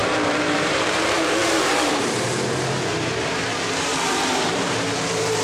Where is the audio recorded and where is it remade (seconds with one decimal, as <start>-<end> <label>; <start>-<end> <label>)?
0.0-5.4 remade